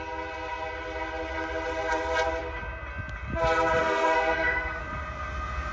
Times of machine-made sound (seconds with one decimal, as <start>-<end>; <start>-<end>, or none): 3.8-4.8